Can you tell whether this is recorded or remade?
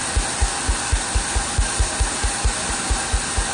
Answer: recorded